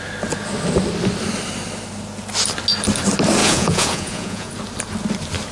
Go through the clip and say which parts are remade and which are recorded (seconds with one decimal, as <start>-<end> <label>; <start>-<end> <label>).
0.0-3.4 recorded; 3.4-4.5 remade; 4.5-5.5 recorded